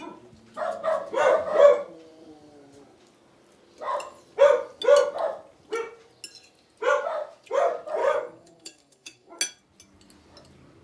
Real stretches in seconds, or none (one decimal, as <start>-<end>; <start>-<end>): 0.0-8.0; 9.4-10.8

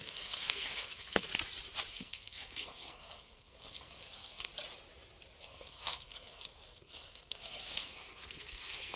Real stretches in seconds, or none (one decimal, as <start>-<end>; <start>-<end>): 1.3-1.9; 4.5-5.4

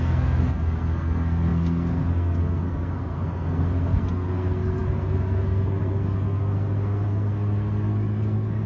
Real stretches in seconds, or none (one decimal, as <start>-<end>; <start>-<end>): none

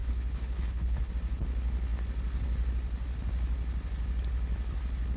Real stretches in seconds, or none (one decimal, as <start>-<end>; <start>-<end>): 1.1-5.2

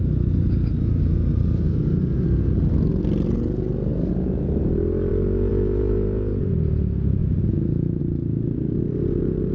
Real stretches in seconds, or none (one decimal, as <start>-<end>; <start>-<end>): 0.0-5.5; 6.5-7.2; 8.0-9.5

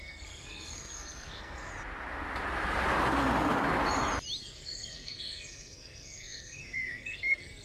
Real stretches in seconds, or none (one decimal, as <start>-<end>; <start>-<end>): 1.7-4.4